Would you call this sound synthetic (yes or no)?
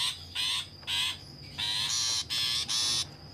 no